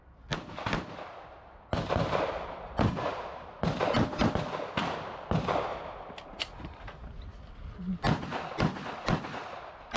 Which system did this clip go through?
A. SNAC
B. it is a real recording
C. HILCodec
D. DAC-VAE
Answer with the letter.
B